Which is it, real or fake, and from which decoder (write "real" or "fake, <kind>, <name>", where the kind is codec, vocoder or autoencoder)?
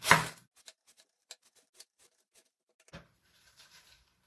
fake, vocoder, BigVGAN v2